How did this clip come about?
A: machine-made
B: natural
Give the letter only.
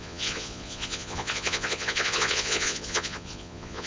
A